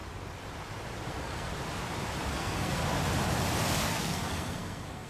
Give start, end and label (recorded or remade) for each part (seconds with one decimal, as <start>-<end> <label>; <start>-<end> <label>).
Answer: 0.0-1.1 recorded; 1.1-1.5 remade; 1.5-2.3 recorded; 2.3-2.8 remade; 2.8-3.8 recorded; 3.8-5.1 remade